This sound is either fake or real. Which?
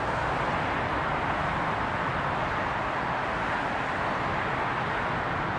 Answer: real